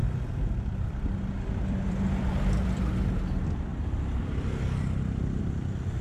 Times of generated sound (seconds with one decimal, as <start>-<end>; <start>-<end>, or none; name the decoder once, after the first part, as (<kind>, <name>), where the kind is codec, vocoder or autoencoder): 0.0-3.2 (vocoder, BigVGAN v2); 3.7-5.4